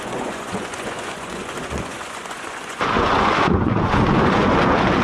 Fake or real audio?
fake